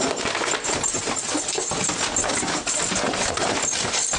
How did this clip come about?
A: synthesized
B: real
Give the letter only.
B